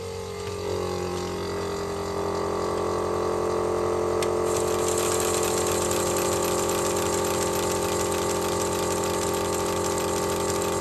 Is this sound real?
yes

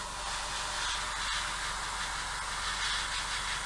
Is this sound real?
yes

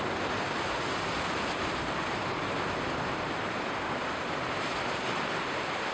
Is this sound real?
no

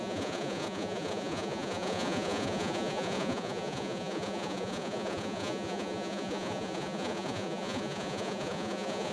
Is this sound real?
no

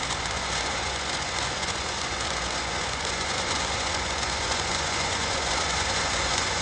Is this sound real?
no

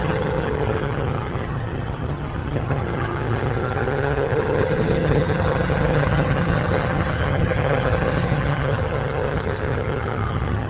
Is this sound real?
no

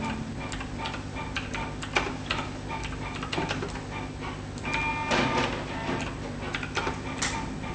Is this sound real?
yes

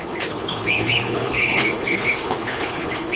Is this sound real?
no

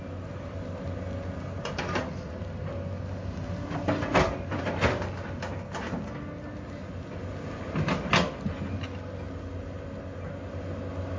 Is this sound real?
yes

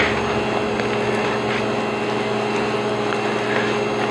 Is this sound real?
yes